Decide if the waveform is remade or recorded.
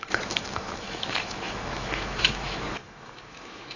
remade